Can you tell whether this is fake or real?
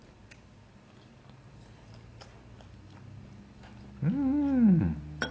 real